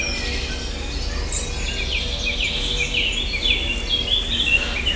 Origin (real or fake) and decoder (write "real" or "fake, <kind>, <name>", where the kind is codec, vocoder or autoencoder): real